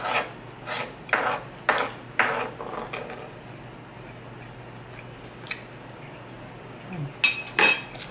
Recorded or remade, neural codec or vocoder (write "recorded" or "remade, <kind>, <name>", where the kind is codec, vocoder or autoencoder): recorded